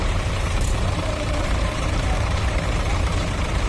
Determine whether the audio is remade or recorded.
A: remade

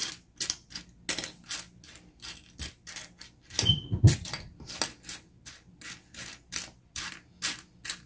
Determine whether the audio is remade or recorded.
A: recorded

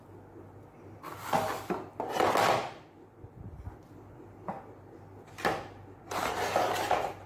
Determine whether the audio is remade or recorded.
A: recorded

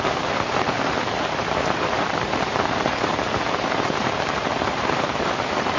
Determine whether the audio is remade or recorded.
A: remade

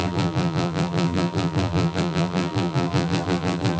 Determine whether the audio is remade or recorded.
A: remade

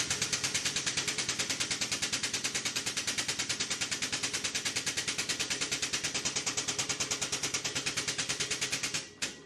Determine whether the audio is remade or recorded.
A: remade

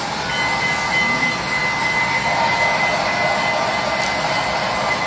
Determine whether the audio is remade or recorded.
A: recorded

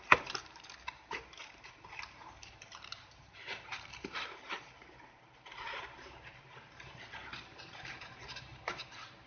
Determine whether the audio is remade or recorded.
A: remade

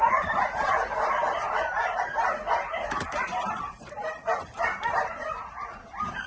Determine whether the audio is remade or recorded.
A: remade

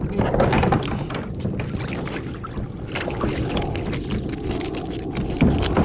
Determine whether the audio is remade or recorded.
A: recorded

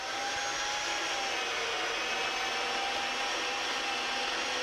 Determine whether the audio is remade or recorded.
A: recorded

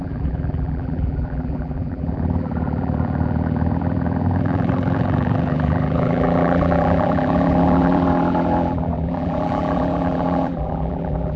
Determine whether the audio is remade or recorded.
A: remade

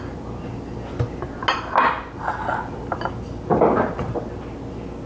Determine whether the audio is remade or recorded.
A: recorded